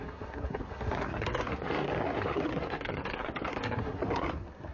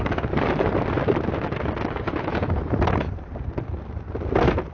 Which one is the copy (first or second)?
first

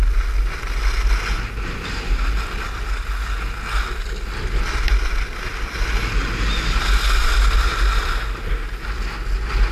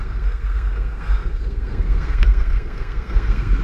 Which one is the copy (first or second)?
second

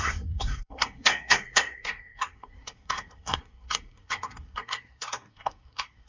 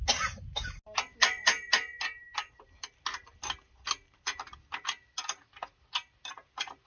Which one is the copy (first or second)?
first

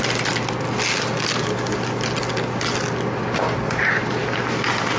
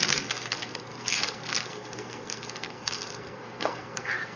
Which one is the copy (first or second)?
second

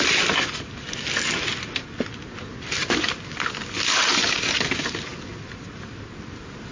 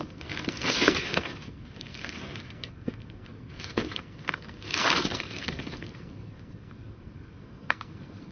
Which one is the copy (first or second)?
second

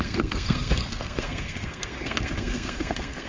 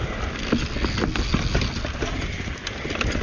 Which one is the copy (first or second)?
first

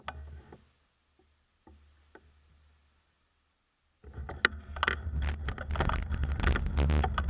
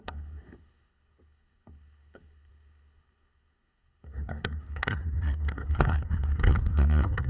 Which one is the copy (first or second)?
second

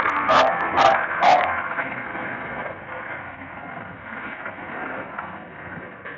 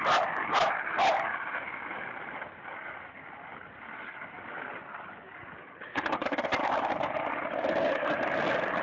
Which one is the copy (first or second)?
first